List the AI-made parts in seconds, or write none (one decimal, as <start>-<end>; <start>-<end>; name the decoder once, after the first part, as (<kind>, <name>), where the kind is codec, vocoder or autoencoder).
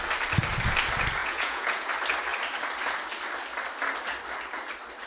1.2-1.9 (vocoder, Vocos)